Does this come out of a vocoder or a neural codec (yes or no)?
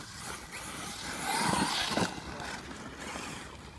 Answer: no